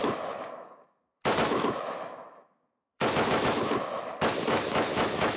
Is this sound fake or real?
fake